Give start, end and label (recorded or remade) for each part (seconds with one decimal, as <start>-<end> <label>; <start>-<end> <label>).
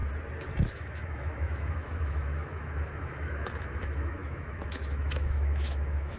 0.0-0.7 recorded; 0.7-6.2 remade